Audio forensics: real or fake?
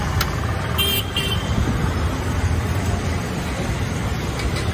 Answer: real